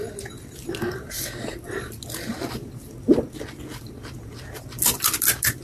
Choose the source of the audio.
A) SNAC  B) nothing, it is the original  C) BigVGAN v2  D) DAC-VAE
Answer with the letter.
B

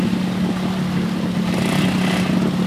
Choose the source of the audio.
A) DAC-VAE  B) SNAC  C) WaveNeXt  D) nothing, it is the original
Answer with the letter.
D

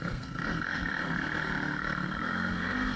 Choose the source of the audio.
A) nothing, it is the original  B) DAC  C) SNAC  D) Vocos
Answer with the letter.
C